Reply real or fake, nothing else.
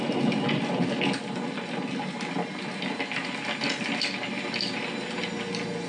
real